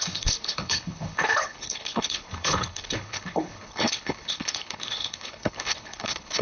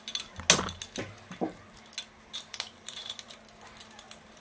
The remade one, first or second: first